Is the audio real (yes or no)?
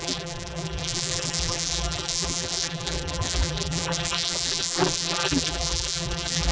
no